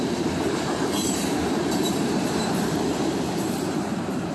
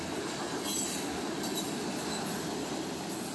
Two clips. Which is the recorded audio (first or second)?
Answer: second